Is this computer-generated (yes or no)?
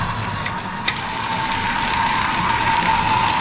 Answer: no